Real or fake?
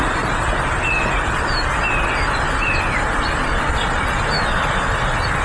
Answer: real